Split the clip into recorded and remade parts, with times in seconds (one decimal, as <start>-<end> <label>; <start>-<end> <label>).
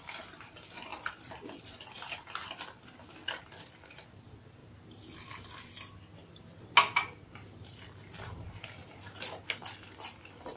0.0-10.6 recorded